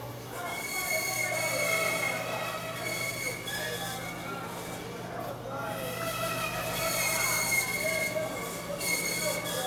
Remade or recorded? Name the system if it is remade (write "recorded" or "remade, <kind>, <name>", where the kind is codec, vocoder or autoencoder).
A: recorded